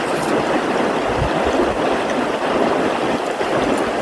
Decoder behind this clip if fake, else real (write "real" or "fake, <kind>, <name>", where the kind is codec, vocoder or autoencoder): real